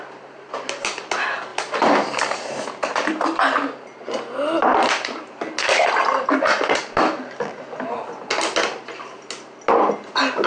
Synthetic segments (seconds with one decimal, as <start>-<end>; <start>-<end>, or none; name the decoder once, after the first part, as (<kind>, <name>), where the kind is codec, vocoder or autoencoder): none